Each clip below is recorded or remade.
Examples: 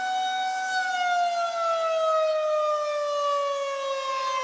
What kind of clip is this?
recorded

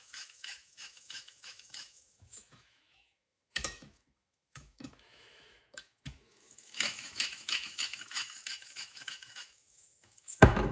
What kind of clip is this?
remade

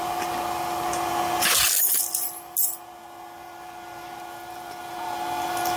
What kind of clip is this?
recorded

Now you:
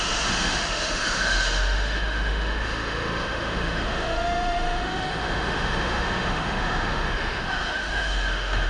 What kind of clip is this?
remade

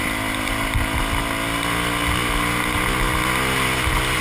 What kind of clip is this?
recorded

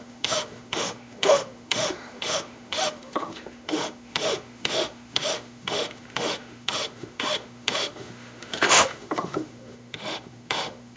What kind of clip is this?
remade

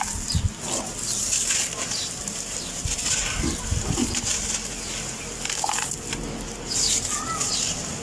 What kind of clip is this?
recorded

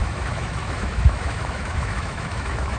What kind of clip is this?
remade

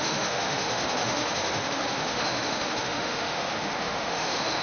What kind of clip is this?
remade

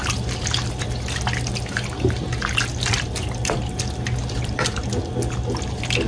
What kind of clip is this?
recorded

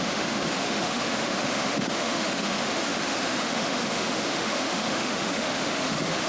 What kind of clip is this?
remade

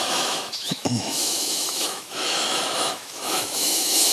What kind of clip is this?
remade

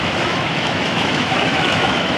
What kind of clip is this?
remade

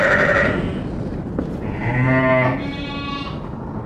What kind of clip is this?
recorded